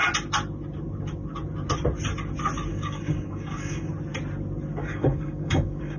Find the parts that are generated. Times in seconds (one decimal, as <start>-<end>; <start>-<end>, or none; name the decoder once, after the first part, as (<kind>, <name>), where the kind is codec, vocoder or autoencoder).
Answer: 2.7-3.9 (codec, DAC); 4.8-6.0